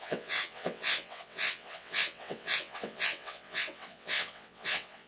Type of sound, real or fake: fake